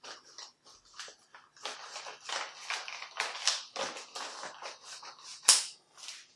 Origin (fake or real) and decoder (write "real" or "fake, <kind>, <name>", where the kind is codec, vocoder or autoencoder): real